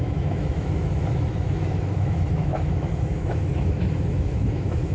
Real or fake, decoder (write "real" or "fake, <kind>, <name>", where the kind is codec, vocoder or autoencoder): fake, autoencoder, DAC-VAE